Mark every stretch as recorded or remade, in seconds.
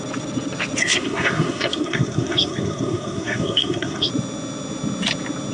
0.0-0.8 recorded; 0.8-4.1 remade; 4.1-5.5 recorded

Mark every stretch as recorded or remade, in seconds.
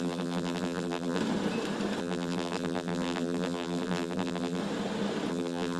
0.0-1.2 remade; 1.2-2.0 recorded; 2.0-4.6 remade; 4.6-5.3 recorded; 5.3-5.8 remade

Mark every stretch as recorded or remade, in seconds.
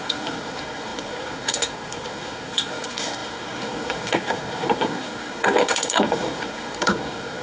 0.0-7.4 remade